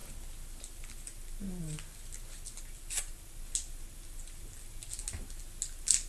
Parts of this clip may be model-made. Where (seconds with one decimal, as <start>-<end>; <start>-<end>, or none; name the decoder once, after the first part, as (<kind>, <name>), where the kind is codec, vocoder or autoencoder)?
none